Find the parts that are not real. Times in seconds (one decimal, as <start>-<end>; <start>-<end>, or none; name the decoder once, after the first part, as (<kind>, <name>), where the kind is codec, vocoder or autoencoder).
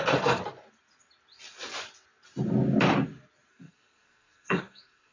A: 0.0-0.4 (codec, SNAC); 3.5-5.1